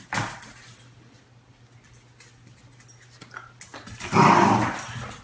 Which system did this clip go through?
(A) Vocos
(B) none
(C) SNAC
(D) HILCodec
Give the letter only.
B